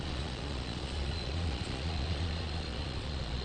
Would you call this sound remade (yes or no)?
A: yes